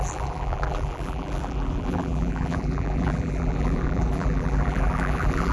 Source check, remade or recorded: remade